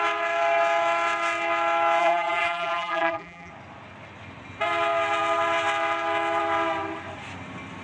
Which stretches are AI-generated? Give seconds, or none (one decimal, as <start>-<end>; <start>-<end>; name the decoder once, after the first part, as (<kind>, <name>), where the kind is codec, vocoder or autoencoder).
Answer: 2.0-3.5 (vocoder, BigVGAN v2)